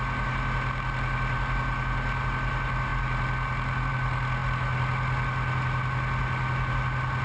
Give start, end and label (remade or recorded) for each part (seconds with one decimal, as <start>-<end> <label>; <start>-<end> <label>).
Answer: 0.0-7.2 recorded